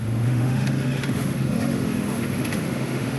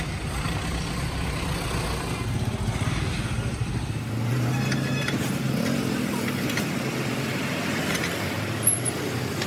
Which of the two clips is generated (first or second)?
first